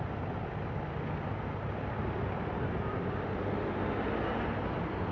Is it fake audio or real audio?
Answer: real